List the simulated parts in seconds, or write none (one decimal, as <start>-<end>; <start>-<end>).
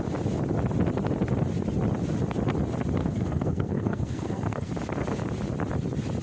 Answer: 3.0-4.7